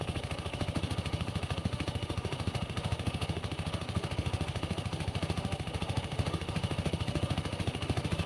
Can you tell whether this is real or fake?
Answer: fake